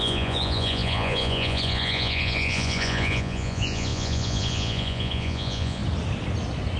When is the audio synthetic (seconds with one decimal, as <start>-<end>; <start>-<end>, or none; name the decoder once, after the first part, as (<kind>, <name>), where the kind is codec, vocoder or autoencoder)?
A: 0.0-5.8 (vocoder, Vocos)

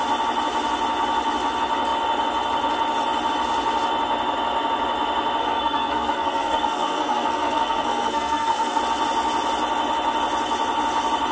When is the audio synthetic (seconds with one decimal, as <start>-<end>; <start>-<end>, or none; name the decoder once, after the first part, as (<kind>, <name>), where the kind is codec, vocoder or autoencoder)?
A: 5.4-8.8 (codec, SNAC)

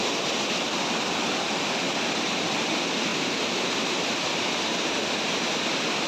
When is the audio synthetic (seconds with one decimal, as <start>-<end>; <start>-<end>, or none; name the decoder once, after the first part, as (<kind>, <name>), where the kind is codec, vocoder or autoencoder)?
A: 2.6-6.1 (vocoder, BigVGAN v2)